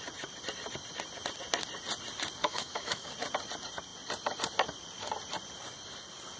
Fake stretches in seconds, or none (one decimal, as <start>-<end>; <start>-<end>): 2.4-3.1